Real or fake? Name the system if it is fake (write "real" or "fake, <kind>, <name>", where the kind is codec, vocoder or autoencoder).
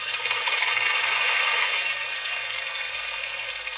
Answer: fake, codec, SNAC